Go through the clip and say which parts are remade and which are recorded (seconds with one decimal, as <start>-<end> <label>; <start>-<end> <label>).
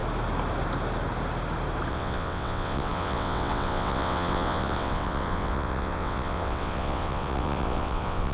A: 0.0-1.9 recorded; 1.9-8.3 remade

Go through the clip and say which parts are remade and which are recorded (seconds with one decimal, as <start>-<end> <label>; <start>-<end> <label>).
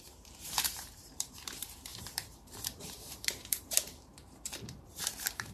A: 0.0-5.5 remade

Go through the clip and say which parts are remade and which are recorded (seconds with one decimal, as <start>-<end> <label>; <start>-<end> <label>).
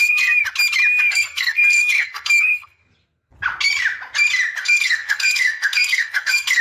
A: 0.0-0.4 remade; 0.4-1.0 recorded; 1.0-2.8 remade; 2.8-4.6 recorded; 4.6-6.6 remade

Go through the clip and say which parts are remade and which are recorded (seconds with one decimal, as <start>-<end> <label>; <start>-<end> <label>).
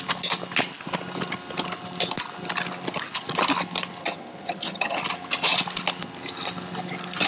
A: 0.0-4.0 recorded; 4.0-5.0 remade; 5.0-7.3 recorded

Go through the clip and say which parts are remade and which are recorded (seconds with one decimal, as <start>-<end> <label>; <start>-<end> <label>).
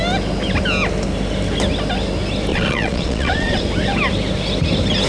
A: 0.0-2.5 recorded; 2.5-3.6 remade; 3.6-5.1 recorded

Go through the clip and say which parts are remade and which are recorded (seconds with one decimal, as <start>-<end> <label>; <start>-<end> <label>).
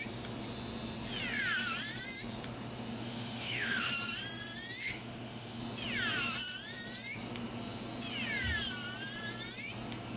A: 0.0-3.0 recorded; 3.0-3.9 remade; 3.9-4.9 recorded; 4.9-5.6 remade; 5.6-10.2 recorded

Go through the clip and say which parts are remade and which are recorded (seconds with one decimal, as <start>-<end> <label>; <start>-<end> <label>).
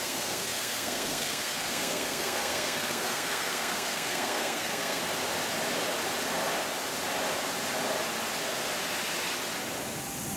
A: 0.0-5.0 remade; 5.0-10.4 recorded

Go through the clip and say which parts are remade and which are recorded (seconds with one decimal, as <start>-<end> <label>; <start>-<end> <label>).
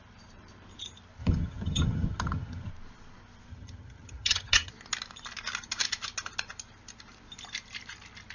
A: 0.0-1.2 recorded; 1.2-2.7 remade; 2.7-3.5 recorded; 3.5-4.7 remade; 4.7-8.3 recorded